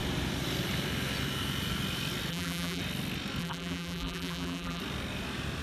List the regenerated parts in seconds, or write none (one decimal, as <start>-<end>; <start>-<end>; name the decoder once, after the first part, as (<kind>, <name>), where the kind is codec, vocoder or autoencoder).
2.3-2.8 (vocoder, BigVGAN v2); 3.4-4.8